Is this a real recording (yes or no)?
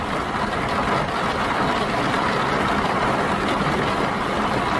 no